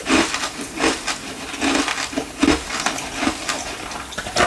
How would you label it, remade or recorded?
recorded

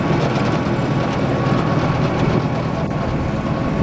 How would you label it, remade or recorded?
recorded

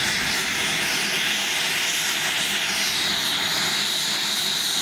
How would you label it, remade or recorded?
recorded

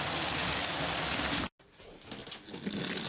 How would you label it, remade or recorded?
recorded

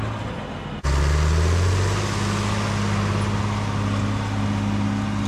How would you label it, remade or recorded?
recorded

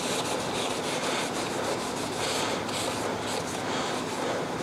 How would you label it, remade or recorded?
recorded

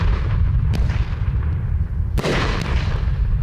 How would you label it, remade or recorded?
remade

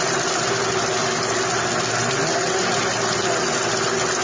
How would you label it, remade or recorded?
recorded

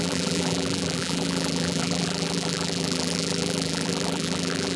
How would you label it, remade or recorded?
remade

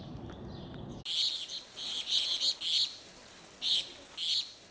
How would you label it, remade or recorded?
recorded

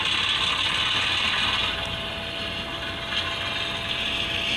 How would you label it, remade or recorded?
recorded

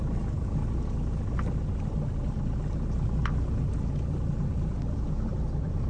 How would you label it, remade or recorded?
recorded